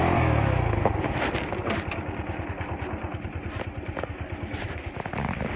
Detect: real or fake real